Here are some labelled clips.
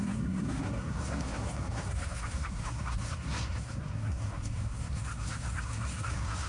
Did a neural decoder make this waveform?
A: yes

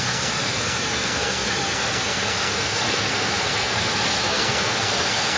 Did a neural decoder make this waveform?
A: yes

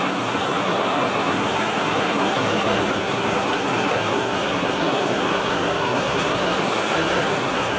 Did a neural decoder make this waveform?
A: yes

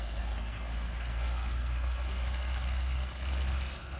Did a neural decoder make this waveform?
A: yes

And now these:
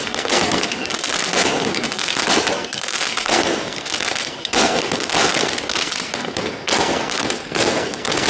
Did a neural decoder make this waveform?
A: yes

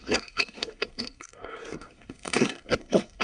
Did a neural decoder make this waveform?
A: yes